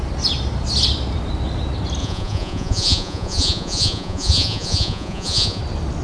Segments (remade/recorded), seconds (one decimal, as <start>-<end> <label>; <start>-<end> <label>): 0.0-2.0 recorded; 2.0-5.6 remade; 5.6-6.0 recorded